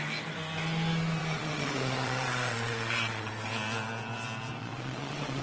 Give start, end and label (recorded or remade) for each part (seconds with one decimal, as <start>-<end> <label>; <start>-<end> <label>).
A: 0.0-1.2 recorded; 1.2-3.3 remade; 3.3-4.6 recorded; 4.6-5.4 remade